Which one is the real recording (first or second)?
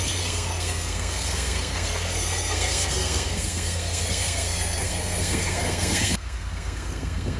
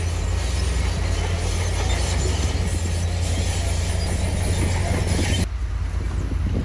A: second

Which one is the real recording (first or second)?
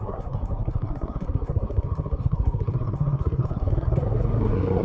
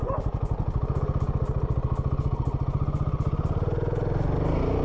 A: second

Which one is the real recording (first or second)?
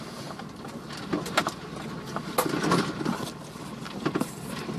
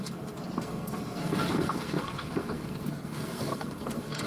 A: first